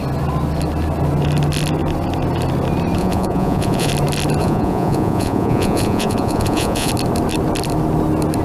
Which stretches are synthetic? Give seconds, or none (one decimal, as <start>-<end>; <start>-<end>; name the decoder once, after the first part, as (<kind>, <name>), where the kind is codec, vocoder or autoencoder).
3.0-3.9 (vocoder, Vocos); 4.4-6.9